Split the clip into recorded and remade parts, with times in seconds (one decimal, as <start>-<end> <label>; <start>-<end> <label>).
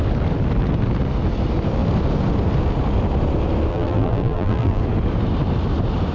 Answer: 0.0-3.7 recorded; 3.7-4.8 remade; 4.8-6.1 recorded